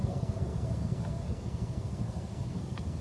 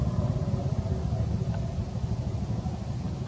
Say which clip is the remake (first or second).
first